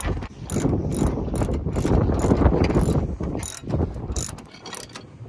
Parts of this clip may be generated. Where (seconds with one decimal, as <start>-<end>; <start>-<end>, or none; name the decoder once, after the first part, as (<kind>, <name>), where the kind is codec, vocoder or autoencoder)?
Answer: none